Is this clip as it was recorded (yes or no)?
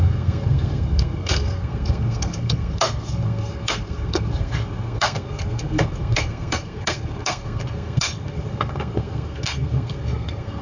no